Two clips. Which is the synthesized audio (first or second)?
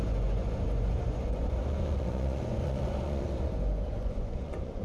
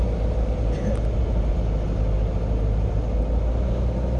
first